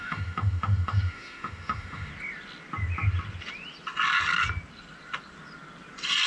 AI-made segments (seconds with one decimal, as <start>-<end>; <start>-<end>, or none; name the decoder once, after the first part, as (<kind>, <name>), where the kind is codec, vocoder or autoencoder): 0.0-2.1 (autoencoder, DAC-VAE)